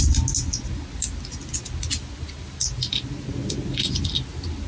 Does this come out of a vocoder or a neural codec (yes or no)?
no